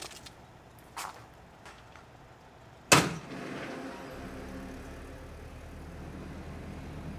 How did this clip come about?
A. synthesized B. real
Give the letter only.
B